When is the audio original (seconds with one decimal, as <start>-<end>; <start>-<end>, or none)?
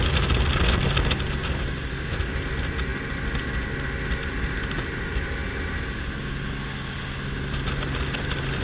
0.0-8.6